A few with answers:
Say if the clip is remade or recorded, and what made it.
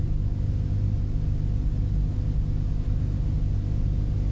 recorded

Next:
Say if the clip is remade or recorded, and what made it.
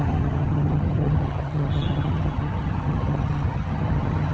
remade, vocoder, HiFi-GAN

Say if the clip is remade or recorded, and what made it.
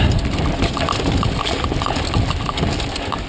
recorded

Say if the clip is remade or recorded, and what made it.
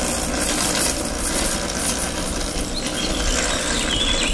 recorded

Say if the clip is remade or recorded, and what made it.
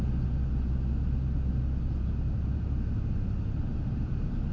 recorded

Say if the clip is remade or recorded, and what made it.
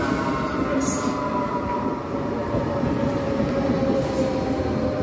recorded